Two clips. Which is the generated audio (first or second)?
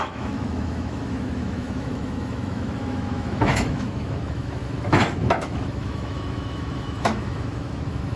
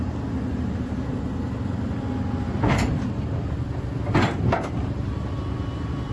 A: first